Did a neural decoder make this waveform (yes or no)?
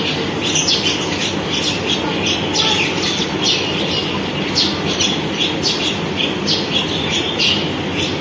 no